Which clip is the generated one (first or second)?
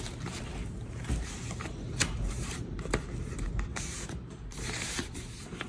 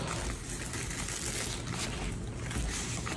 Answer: first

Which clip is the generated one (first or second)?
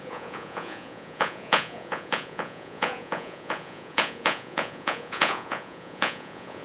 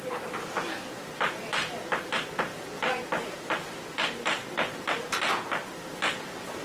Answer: first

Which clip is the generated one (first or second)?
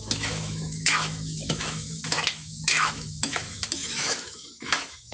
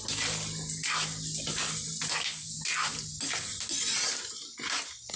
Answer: first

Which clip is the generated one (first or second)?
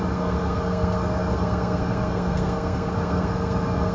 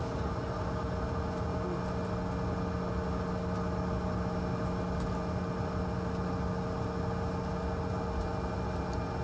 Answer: first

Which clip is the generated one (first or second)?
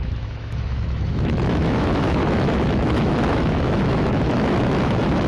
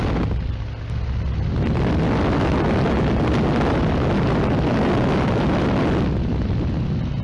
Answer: first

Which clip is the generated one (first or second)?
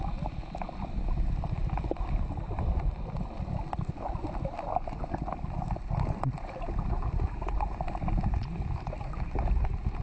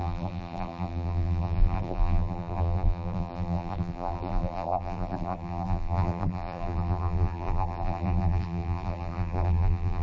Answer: second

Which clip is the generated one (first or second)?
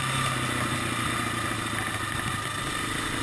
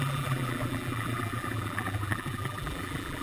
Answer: second